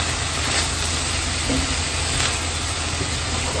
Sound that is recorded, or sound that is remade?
recorded